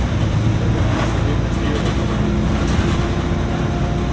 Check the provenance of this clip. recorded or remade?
recorded